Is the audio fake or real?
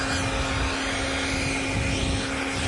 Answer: real